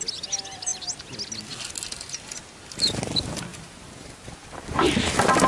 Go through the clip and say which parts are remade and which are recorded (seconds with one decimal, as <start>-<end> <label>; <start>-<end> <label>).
0.0-5.5 recorded